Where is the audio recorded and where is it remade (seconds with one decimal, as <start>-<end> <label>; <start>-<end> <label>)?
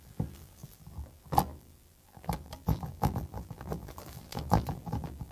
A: 0.0-5.3 remade